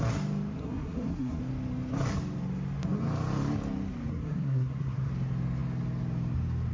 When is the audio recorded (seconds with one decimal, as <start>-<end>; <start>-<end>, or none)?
0.0-0.6; 1.4-4.1; 5.1-6.7